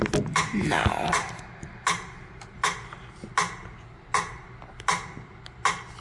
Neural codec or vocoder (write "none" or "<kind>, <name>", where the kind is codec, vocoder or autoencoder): none